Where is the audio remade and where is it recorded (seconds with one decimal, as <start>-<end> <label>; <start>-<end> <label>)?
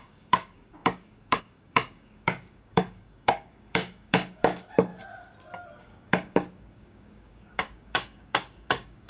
0.0-4.9 remade; 4.9-5.8 recorded; 5.8-9.1 remade